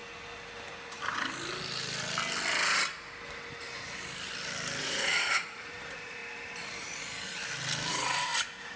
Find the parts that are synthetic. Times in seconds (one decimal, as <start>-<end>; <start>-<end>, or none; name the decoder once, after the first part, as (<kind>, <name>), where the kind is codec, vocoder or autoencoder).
4.8-6.2 (vocoder, Vocos); 7.9-8.3

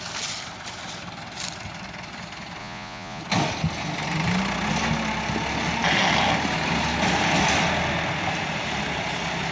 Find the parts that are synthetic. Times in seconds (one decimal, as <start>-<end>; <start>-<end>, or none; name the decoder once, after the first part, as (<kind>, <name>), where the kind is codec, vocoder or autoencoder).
2.6-3.2 (vocoder, Vocos)